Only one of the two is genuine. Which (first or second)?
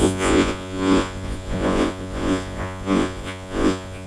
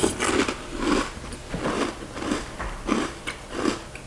second